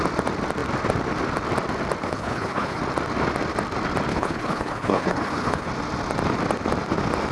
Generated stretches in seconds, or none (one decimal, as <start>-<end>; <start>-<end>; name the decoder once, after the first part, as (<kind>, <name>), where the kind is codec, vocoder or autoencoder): 2.0-2.8 (codec, HILCodec); 4.1-5.7